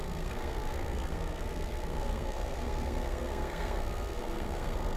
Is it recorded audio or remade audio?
remade